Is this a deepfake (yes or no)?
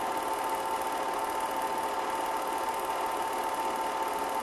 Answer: no